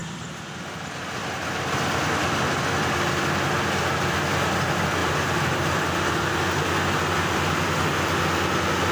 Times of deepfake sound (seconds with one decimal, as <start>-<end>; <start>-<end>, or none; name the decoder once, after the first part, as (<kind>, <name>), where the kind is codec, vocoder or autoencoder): 0.0-0.5 (vocoder, BigVGAN v2); 5.0-6.3